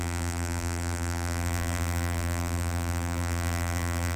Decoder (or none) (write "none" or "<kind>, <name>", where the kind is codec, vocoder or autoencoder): vocoder, BigVGAN v2